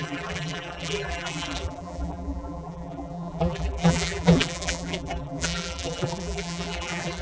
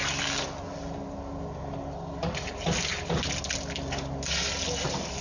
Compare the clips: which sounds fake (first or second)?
first